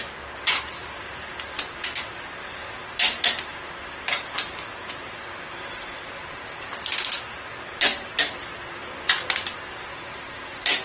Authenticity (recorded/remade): recorded